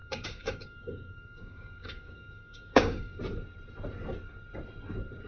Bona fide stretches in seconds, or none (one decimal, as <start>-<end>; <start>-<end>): 3.2-5.3